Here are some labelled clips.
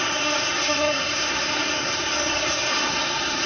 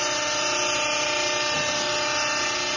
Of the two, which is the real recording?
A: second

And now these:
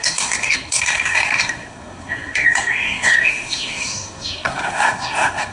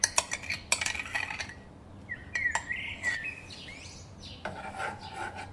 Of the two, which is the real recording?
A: second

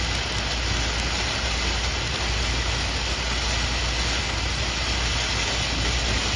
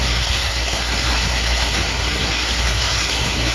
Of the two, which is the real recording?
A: first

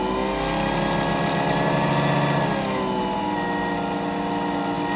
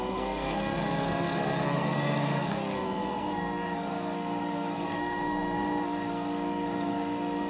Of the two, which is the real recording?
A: first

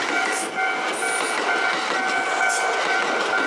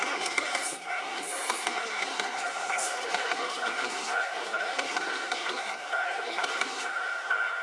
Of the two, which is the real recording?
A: first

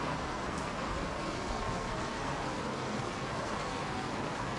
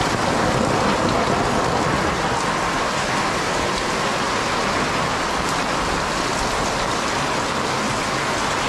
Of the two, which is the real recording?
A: second